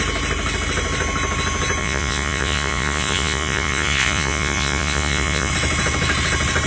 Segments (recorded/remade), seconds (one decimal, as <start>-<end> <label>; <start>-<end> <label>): 0.0-1.8 recorded; 1.8-5.5 remade; 5.5-6.7 recorded